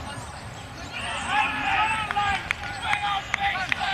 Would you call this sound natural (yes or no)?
no